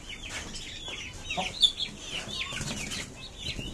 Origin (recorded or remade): recorded